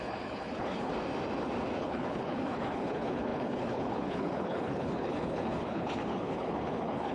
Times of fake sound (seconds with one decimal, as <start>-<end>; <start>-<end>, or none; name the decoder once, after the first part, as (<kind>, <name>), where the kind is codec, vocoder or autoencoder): 0.0-0.9 (codec, HILCodec); 1.8-7.1